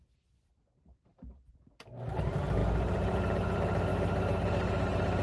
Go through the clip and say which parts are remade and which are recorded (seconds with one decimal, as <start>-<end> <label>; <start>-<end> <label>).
0.0-5.2 recorded